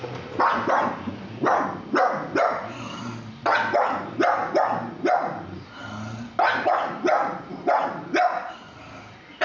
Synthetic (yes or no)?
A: no